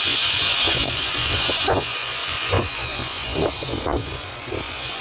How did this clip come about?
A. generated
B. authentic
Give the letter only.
A